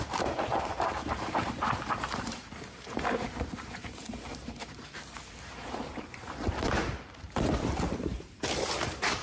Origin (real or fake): fake